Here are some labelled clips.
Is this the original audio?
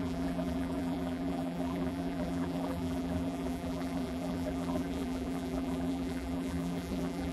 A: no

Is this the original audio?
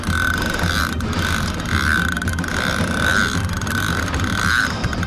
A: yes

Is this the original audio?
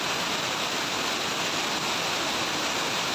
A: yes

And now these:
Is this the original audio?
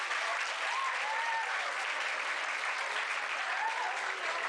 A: yes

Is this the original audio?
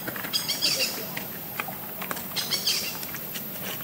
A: yes